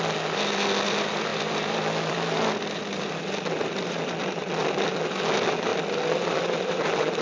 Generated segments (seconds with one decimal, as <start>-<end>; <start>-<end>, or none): 1.3-4.9; 5.7-6.8